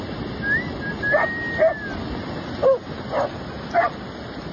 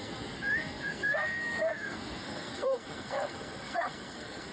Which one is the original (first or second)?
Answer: first